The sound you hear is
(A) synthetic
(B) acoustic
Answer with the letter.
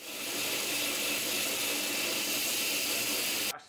B